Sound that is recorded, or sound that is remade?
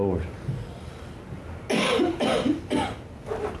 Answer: recorded